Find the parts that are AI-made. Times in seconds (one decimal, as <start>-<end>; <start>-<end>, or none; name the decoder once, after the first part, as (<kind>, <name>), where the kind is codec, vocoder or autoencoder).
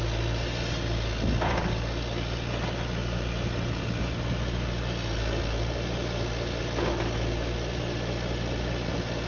none